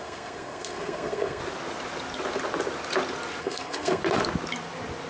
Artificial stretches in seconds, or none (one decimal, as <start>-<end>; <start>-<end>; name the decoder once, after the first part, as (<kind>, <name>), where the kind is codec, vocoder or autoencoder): 0.0-1.4 (codec, SNAC); 3.4-4.0